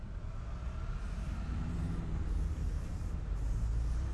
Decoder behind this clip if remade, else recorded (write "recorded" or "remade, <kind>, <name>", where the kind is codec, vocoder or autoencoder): recorded